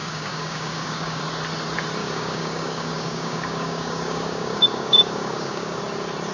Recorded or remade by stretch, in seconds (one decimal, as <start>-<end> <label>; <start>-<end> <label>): 0.0-1.2 remade; 1.2-2.0 recorded; 2.0-5.8 remade; 5.8-6.3 recorded